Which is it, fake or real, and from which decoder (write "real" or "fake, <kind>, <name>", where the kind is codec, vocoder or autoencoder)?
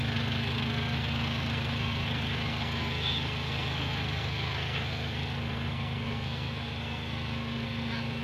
fake, codec, SNAC